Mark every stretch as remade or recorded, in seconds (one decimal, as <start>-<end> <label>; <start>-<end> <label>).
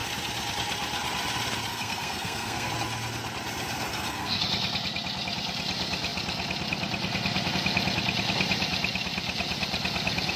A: 0.0-1.7 recorded; 1.7-2.7 remade; 2.7-3.9 recorded; 3.9-4.4 remade; 4.4-10.4 recorded